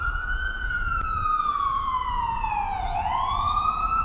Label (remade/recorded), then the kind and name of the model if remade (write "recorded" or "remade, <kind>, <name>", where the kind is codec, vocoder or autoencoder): remade, vocoder, Vocos